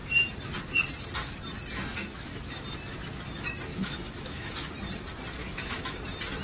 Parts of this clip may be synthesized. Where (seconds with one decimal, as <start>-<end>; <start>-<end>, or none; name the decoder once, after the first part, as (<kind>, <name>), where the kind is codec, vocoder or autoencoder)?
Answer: 2.0-2.6 (autoencoder, DAC-VAE); 3.7-4.7; 5.4-6.0